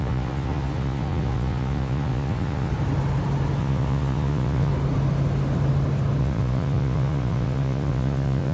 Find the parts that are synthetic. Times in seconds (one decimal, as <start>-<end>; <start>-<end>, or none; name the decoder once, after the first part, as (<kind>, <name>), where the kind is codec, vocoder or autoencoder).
0.0-2.7 (vocoder, Vocos); 3.6-4.7; 6.2-8.5